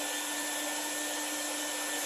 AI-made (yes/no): no